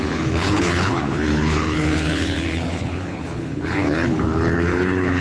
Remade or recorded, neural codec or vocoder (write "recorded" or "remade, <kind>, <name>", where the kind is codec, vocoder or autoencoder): remade, codec, HILCodec